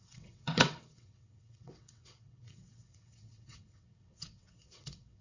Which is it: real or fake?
fake